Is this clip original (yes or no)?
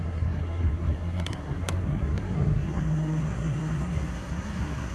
no